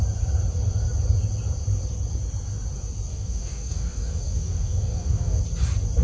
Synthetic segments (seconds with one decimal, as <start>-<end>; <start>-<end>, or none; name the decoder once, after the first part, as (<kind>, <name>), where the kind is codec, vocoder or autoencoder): 3.1-5.4 (codec, DAC)